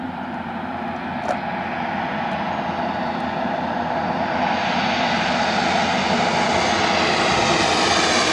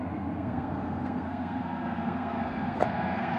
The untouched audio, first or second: first